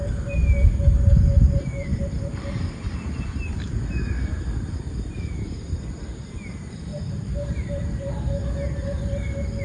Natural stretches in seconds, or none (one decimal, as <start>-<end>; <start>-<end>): 0.0-6.9; 8.1-9.6

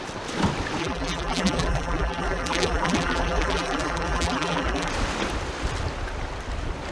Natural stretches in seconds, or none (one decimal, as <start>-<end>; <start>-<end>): 0.0-0.8; 4.9-6.9